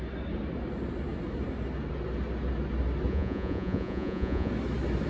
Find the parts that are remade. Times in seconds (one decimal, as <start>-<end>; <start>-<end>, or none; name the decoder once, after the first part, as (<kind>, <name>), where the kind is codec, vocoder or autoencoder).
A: 3.1-4.5 (vocoder, Vocos)